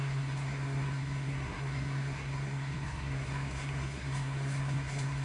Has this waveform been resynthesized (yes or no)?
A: yes